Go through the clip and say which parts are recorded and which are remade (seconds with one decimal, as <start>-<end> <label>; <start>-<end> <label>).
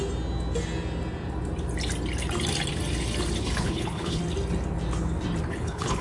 0.0-3.4 recorded; 3.4-4.2 remade; 4.2-5.5 recorded; 5.5-6.0 remade